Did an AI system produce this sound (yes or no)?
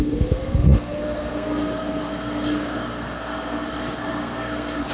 yes